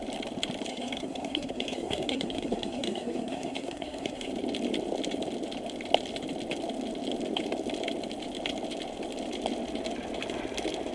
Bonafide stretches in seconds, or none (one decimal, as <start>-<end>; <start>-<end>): 0.0-0.7; 4.3-10.9